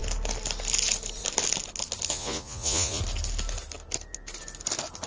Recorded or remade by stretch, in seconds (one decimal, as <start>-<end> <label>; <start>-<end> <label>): 0.0-2.1 recorded; 2.1-3.0 remade; 3.0-5.1 recorded